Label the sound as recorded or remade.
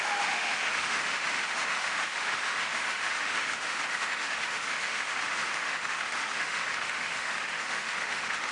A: remade